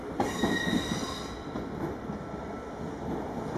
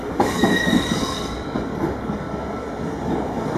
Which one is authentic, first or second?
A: first